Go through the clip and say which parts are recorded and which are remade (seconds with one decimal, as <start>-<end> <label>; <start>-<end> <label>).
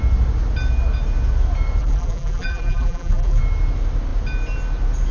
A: 0.0-1.8 recorded; 1.8-3.4 remade; 3.4-5.1 recorded